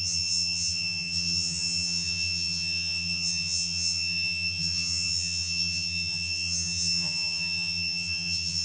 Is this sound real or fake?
fake